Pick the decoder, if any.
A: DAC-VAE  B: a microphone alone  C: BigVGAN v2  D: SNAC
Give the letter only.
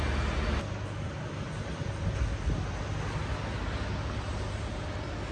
B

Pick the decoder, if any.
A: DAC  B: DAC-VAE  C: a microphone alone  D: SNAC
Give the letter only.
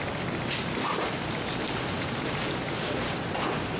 C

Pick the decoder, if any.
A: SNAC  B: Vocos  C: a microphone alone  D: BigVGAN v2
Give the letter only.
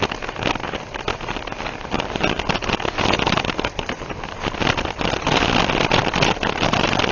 C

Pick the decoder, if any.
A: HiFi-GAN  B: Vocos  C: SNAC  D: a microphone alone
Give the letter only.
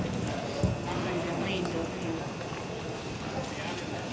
D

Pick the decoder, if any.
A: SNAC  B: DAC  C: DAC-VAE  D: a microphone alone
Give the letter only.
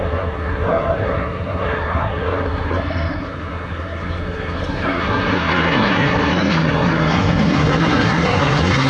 A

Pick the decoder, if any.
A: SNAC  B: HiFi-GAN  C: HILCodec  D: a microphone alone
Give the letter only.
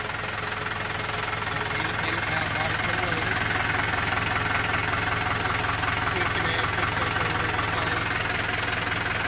D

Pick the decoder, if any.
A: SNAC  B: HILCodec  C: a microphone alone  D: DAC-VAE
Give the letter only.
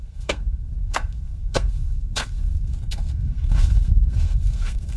A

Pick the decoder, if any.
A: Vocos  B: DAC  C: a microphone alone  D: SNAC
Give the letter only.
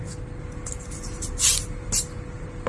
C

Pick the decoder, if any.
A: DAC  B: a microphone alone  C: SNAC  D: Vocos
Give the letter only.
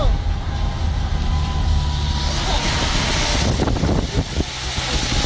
B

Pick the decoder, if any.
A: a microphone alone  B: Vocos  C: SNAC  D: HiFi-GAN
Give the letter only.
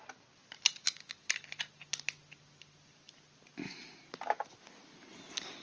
A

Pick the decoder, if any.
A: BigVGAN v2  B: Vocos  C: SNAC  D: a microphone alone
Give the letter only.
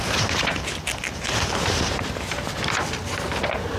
D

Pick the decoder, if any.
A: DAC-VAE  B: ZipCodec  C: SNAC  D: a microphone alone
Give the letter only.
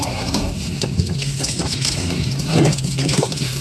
C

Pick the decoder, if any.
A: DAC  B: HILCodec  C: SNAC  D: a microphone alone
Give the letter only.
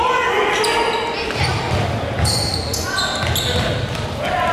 D